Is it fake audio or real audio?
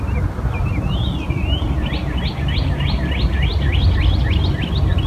real